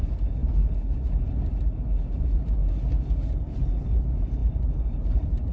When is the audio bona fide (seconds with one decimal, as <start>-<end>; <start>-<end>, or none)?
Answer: 0.0-4.4